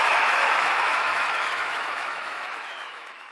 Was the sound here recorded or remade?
remade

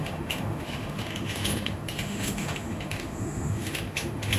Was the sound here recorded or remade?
remade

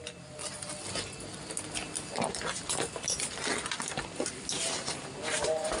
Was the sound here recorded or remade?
recorded